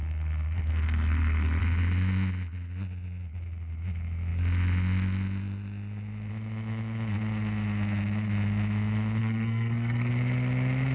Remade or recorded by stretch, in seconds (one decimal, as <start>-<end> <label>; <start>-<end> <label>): 0.0-1.6 remade; 1.6-9.2 recorded; 9.2-10.1 remade; 10.1-10.9 recorded